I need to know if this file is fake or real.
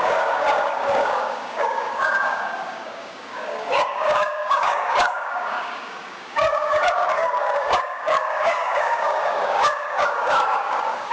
fake